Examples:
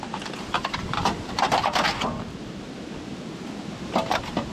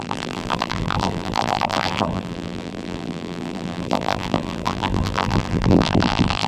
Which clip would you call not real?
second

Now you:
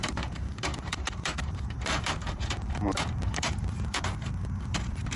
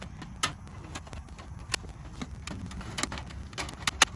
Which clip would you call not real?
first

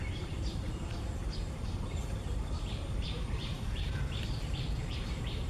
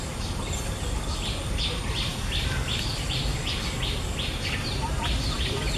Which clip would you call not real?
first